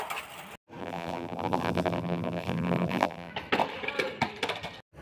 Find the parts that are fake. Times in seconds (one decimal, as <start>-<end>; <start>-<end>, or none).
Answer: 0.8-3.3